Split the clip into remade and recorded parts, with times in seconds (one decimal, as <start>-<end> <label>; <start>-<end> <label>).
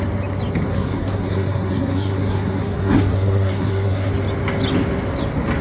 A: 0.0-0.7 recorded; 0.7-4.1 remade; 4.1-5.6 recorded